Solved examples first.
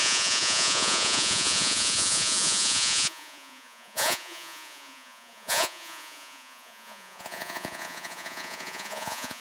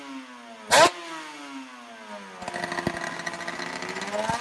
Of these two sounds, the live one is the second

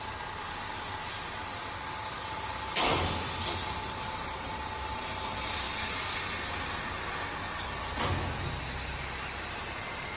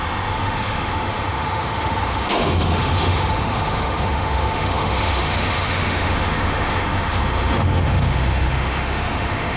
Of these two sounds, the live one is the first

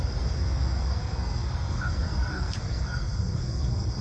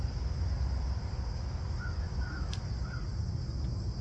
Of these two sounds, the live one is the second